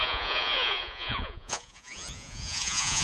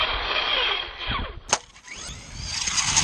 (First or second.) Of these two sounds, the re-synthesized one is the first